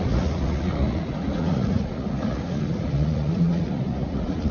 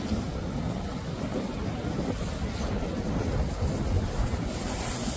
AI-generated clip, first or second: first